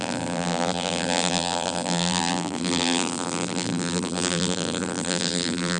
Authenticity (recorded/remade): remade